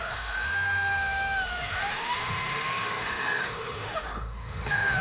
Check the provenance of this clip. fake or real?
fake